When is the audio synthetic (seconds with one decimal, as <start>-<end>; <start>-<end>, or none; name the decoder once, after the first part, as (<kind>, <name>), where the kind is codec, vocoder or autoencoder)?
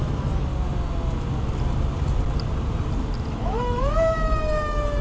0.0-0.5 (autoencoder, DAC-VAE); 3.3-5.0